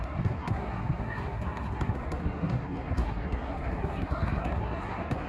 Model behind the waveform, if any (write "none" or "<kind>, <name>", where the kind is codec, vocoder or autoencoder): codec, SNAC